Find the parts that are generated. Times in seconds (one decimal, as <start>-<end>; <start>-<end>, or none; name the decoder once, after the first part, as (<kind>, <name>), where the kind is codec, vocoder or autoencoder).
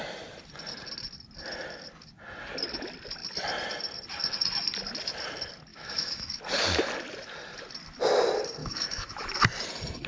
5.7-6.4 (autoencoder, DAC-VAE); 8.6-9.3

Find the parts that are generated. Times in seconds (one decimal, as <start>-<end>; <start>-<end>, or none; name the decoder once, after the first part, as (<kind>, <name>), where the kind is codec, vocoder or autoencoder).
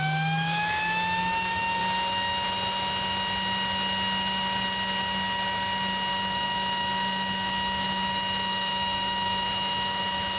0.0-1.8 (autoencoder, DAC-VAE); 6.1-10.4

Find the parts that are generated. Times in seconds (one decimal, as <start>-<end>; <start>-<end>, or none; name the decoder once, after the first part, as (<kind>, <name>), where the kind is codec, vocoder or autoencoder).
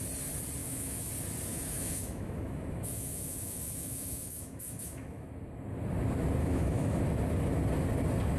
0.6-1.1 (autoencoder, DAC-VAE); 1.5-5.3; 6.4-7.0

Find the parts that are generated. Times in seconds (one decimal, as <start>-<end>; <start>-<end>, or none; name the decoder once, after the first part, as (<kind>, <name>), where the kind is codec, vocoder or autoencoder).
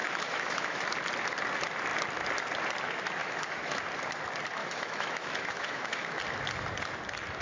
0.0-0.8 (autoencoder, DAC-VAE); 3.2-3.8; 4.6-6.2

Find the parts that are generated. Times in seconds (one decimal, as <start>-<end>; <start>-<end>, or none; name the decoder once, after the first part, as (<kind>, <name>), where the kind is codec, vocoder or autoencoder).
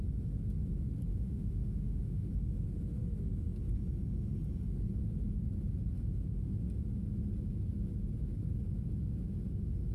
1.1-2.3 (autoencoder, DAC-VAE)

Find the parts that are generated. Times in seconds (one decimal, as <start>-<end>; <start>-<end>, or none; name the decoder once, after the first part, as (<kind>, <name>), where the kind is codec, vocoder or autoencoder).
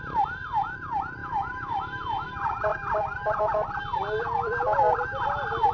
1.2-2.3 (autoencoder, DAC-VAE)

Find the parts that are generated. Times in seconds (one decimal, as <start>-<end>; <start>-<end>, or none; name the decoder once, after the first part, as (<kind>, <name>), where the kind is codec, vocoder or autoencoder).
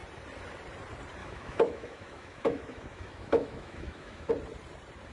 1.2-4.3 (autoencoder, DAC-VAE)